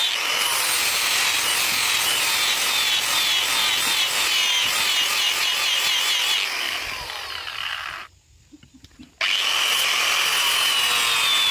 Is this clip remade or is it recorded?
recorded